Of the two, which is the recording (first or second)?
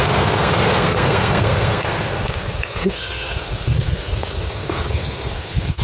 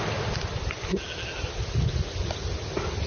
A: second